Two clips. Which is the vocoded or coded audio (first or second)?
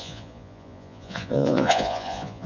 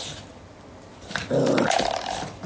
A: first